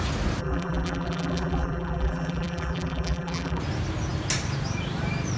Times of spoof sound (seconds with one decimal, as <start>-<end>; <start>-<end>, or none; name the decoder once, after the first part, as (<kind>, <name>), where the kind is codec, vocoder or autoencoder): 0.4-3.6 (vocoder, BigVGAN v2)